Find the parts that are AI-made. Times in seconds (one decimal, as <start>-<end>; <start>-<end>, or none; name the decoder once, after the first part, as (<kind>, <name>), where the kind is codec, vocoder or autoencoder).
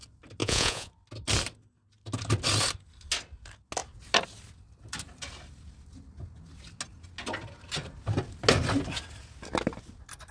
0.4-0.9 (vocoder, Vocos)